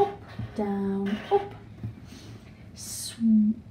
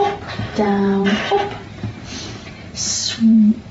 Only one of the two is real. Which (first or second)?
first